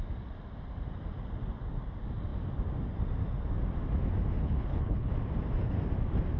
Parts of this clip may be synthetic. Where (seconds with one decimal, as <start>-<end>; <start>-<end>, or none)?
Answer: 4.4-5.1